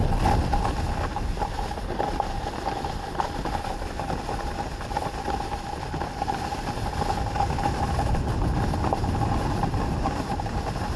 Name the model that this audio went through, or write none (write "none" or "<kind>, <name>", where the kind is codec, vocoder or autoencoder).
none